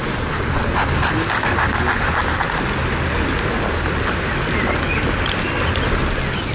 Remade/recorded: recorded